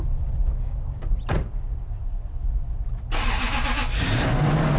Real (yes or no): yes